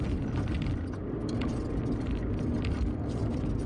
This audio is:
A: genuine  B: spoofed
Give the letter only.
A